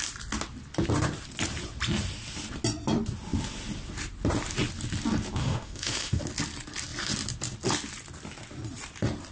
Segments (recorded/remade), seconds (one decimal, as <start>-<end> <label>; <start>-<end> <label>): 0.0-5.4 recorded; 5.4-6.2 remade; 6.2-9.3 recorded